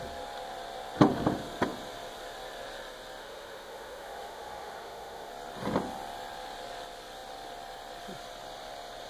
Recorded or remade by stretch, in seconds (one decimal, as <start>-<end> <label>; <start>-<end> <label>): 0.0-3.2 recorded; 3.2-5.3 remade; 5.3-9.1 recorded